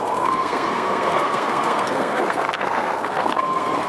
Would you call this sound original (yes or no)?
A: no